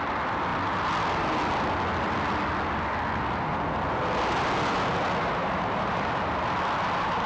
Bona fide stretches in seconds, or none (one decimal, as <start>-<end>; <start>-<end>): 0.0-5.4; 6.2-7.3